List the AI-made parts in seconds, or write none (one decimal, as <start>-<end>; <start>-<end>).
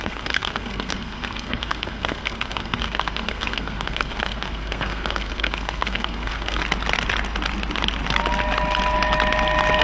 0.0-6.6